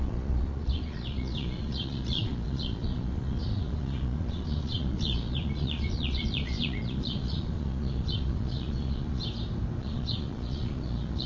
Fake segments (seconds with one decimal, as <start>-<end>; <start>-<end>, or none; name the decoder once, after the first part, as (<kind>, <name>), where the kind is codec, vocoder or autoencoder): 0.0-9.2 (vocoder, Vocos); 9.8-11.3